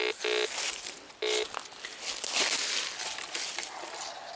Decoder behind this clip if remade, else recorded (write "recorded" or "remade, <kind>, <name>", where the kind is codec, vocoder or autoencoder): recorded